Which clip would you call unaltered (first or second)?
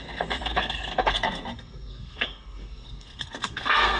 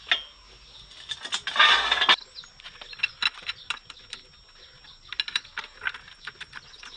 second